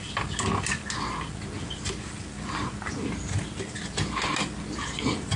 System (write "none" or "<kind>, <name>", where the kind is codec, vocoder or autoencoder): none